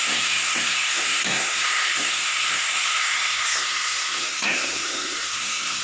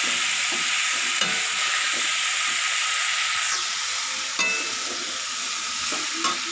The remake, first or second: first